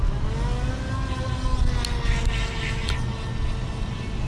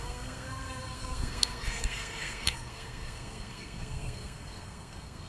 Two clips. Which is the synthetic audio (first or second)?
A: second